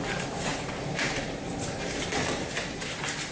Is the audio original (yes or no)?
no